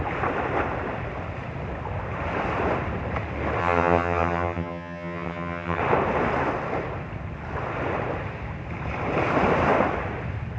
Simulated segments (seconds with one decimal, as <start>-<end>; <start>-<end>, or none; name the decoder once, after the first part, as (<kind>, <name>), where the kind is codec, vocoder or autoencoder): 3.6-5.8 (vocoder, HiFi-GAN)